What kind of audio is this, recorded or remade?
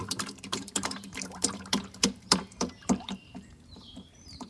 remade